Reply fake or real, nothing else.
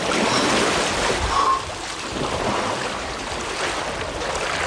real